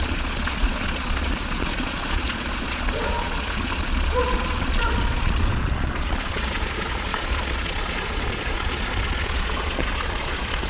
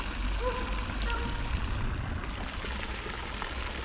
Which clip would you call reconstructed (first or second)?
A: first